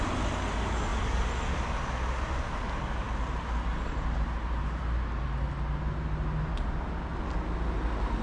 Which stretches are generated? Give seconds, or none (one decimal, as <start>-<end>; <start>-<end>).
none